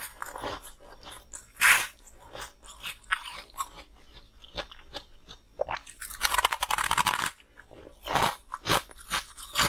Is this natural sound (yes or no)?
yes